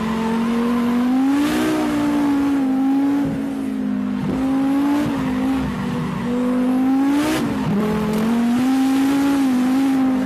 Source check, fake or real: real